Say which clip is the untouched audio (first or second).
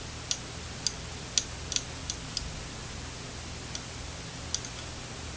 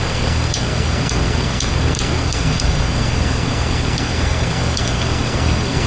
first